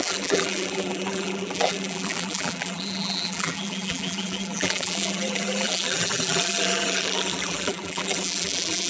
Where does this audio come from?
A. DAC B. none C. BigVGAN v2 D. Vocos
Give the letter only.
C